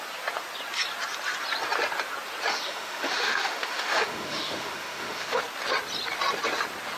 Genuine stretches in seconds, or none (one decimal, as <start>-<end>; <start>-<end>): 0.0-2.5; 5.4-7.0